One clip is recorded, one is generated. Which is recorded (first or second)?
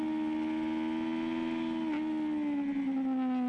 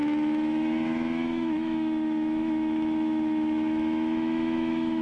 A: first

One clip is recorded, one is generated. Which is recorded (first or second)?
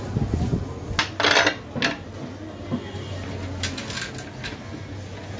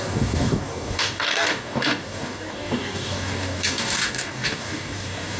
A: first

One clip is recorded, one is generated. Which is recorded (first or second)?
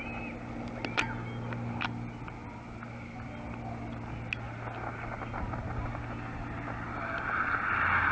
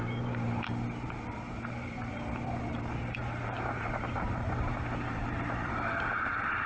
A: first